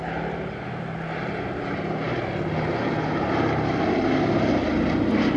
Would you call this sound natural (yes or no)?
yes